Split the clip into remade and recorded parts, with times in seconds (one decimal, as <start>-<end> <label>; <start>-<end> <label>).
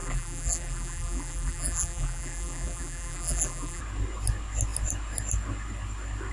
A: 0.0-3.8 remade; 3.8-6.3 recorded